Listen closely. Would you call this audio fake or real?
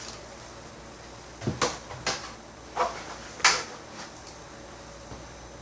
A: real